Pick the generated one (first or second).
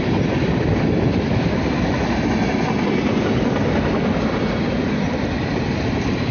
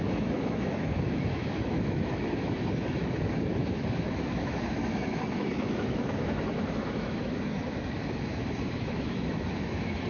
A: second